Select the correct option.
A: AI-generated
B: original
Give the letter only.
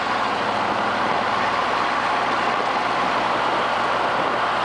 B